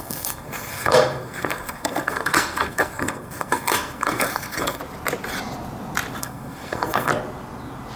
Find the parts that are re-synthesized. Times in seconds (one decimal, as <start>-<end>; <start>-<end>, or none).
0.0-4.8; 6.2-7.1